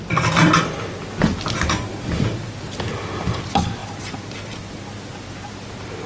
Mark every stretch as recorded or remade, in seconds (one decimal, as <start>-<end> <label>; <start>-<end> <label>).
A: 0.0-3.8 recorded; 3.8-5.5 remade; 5.5-6.1 recorded